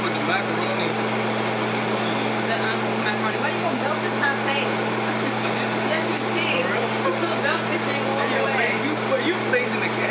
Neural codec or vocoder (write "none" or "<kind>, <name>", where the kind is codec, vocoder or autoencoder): none